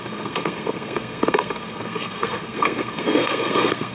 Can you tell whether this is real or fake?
fake